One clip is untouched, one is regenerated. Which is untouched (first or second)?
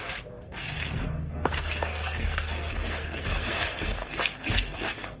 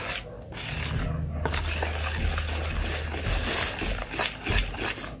second